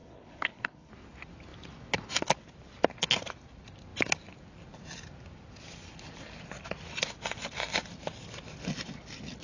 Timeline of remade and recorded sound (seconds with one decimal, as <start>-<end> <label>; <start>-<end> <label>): 0.0-0.9 remade; 0.9-9.4 recorded

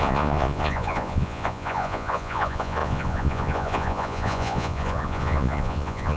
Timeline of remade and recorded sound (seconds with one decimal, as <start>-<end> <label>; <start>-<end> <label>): 0.0-6.2 remade

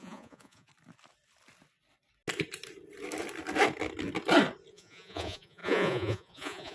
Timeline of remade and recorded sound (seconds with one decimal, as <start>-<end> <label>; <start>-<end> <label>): 0.0-0.7 remade; 0.7-4.7 recorded; 4.7-6.7 remade

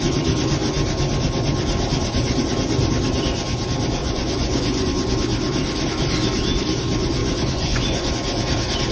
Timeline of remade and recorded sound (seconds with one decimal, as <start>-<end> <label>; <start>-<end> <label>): 0.0-4.0 recorded; 4.0-4.9 remade; 4.9-7.2 recorded; 7.2-8.1 remade; 8.1-8.9 recorded

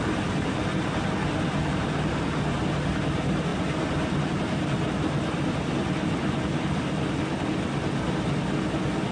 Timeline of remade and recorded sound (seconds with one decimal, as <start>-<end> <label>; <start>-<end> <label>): 0.0-9.1 recorded

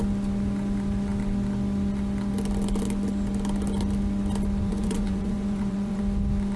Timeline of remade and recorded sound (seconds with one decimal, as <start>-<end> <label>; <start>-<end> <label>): 0.0-4.7 recorded; 4.7-6.0 remade; 6.0-6.6 recorded